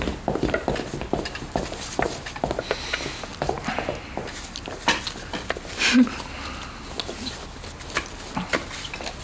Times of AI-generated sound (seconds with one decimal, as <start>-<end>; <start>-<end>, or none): none